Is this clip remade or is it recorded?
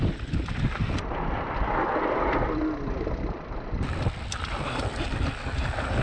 remade